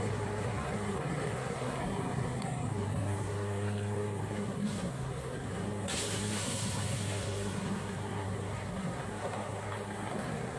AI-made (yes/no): yes